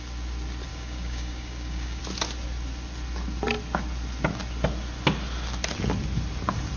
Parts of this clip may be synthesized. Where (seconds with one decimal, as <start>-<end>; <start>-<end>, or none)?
0.7-2.0